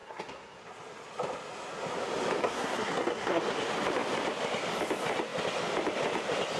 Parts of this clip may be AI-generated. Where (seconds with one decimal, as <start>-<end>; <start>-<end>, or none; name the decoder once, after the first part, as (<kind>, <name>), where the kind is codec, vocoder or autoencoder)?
0.0-0.6 (codec, SNAC); 2.4-3.4